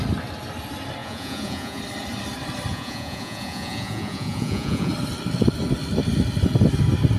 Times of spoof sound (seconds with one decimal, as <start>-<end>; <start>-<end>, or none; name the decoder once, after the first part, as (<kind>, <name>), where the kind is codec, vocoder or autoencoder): 1.0-1.8 (vocoder, Vocos); 2.7-4.9